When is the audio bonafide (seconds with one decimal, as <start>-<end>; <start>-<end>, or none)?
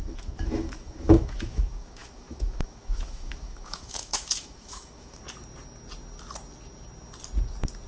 5.2-7.9